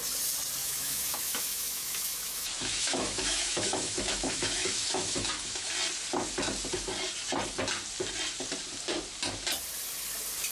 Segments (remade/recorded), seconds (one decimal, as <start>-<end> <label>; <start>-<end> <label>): 0.0-0.6 recorded; 0.6-5.7 remade; 5.7-10.5 recorded

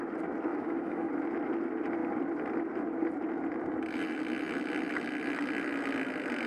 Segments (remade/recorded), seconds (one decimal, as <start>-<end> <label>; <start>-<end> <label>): 0.0-0.5 recorded; 0.5-1.1 remade; 1.1-6.5 recorded

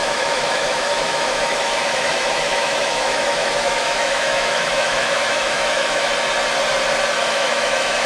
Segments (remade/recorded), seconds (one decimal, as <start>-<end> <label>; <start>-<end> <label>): 0.0-6.1 remade; 6.1-7.2 recorded; 7.2-8.1 remade

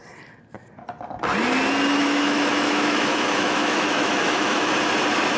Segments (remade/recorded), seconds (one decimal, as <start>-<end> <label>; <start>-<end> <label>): 0.0-1.9 recorded; 1.9-4.7 remade; 4.7-5.4 recorded

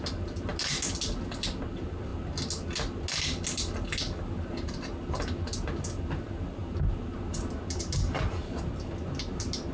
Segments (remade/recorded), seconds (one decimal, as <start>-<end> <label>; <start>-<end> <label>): 0.0-9.7 recorded

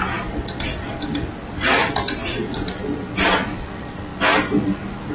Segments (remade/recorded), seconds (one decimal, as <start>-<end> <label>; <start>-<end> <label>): 0.0-5.1 recorded

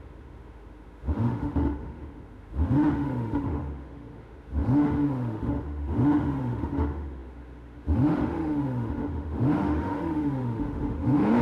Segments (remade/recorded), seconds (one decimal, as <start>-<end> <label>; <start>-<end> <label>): 0.0-11.4 remade